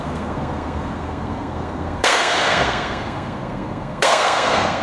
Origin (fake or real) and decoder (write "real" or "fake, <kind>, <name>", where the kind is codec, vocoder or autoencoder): fake, codec, SNAC